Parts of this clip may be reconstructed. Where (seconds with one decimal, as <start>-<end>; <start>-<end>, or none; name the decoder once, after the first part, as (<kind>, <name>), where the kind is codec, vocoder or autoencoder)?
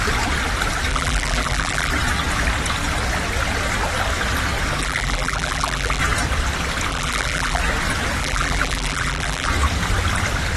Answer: 0.9-1.9 (vocoder, BigVGAN v2); 4.8-6.0; 6.9-7.6; 8.2-9.5